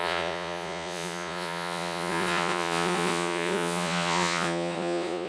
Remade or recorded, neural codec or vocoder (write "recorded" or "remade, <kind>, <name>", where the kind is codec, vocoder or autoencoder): remade, vocoder, Vocos